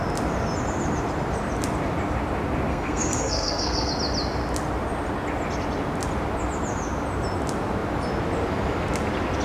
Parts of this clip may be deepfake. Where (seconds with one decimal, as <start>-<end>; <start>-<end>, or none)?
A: 2.7-3.9